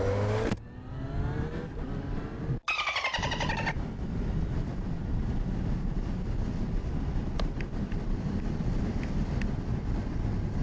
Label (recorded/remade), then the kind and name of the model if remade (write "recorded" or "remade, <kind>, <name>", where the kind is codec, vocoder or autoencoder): recorded